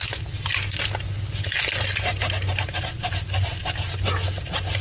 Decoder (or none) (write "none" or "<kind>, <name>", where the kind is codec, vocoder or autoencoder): none